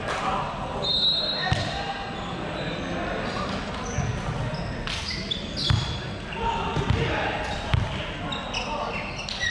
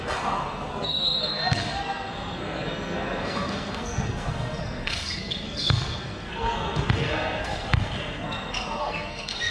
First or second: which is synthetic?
second